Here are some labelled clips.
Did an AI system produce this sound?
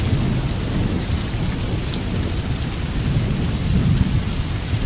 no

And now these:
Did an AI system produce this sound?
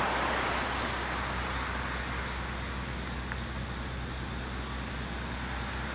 no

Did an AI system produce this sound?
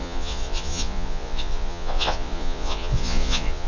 yes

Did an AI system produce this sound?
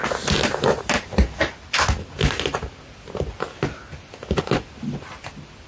no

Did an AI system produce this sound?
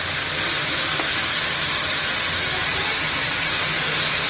no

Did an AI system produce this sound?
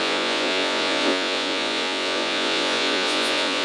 yes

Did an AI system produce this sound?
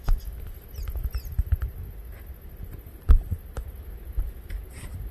no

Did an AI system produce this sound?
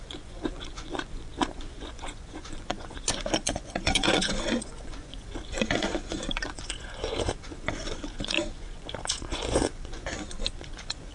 yes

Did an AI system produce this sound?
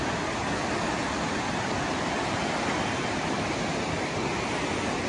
no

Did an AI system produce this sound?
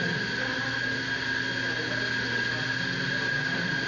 no